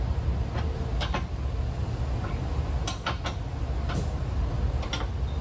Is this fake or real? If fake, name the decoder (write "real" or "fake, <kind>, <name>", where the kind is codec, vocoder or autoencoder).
real